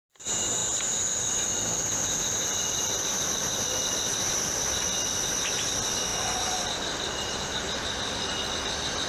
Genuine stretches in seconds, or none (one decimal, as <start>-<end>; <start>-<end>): 0.0-9.1